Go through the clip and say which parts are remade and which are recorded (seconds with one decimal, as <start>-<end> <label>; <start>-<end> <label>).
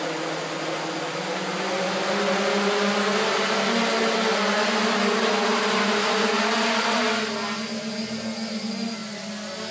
0.0-9.7 recorded